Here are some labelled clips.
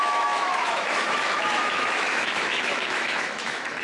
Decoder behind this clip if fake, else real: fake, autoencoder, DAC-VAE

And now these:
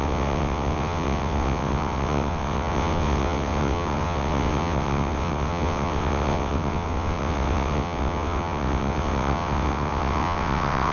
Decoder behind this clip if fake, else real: fake, vocoder, WaveNeXt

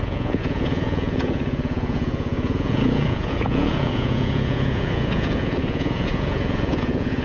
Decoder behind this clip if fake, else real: fake, vocoder, Vocos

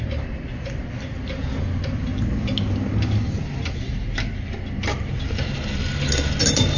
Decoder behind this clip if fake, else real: real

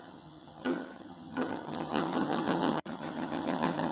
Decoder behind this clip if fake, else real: fake, vocoder, HiFi-GAN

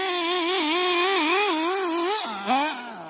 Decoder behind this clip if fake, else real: real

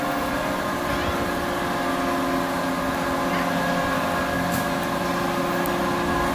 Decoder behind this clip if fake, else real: real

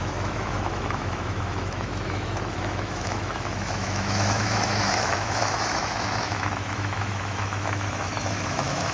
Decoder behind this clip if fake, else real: fake, autoencoder, DAC-VAE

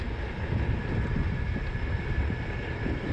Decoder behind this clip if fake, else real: real